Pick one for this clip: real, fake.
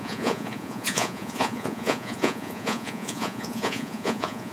fake